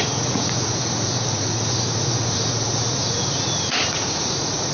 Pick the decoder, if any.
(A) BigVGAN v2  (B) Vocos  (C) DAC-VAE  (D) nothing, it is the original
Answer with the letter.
B